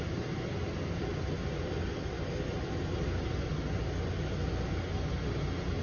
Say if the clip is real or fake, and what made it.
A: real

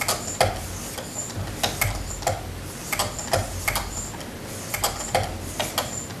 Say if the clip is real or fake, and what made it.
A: real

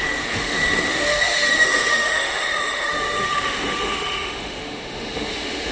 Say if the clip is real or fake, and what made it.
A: fake, autoencoder, DAC-VAE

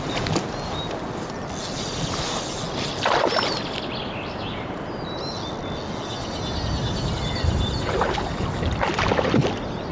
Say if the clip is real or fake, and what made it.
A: real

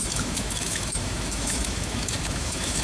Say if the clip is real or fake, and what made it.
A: fake, autoencoder, DAC-VAE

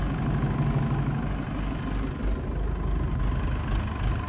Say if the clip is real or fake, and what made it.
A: real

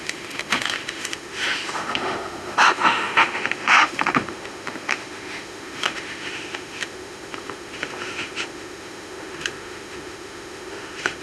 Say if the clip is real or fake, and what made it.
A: fake, autoencoder, DAC-VAE